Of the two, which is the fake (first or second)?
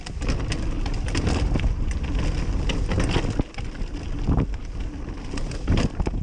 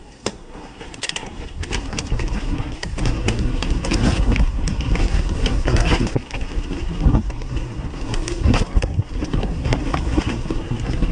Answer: second